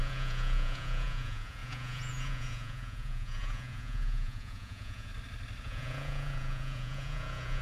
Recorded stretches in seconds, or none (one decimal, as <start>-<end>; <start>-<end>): 5.1-5.6

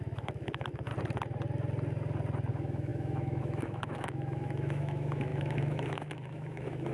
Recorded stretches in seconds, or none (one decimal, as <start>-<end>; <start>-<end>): 0.9-2.5

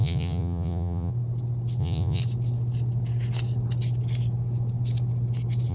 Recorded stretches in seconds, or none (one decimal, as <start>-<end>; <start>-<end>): 1.1-1.8; 2.2-5.7

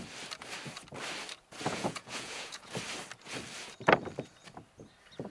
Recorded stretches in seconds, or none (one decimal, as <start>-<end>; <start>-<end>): 0.0-1.7; 2.7-5.3